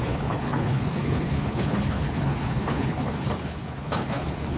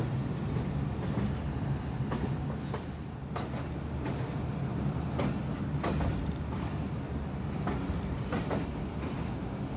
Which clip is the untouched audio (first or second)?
second